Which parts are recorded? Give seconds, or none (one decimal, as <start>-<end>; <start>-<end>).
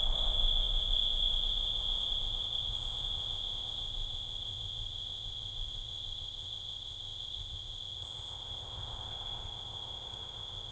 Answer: none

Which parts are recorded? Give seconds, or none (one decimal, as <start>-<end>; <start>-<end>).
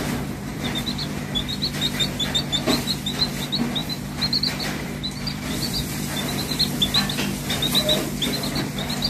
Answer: 0.0-0.5; 1.1-3.8; 6.7-9.1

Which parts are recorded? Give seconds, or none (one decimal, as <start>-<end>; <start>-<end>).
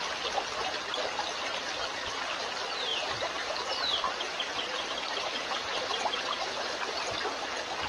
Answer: 0.0-2.9; 6.8-7.9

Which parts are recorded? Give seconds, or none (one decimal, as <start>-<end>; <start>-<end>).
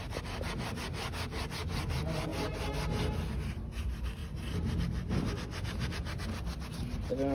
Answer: 0.0-7.3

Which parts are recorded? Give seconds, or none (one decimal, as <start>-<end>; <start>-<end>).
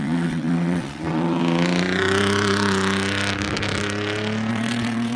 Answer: 1.4-4.5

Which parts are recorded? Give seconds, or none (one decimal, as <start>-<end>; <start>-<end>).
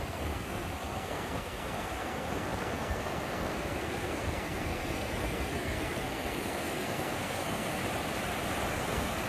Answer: 7.8-8.7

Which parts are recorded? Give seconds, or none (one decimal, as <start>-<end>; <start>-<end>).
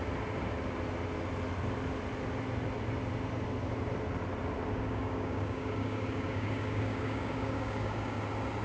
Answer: 0.0-4.7; 8.2-8.6